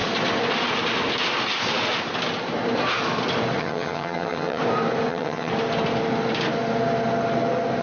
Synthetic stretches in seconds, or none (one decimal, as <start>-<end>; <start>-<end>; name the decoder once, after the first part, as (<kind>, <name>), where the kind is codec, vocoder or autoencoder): 3.6-4.6 (vocoder, HiFi-GAN); 5.1-5.5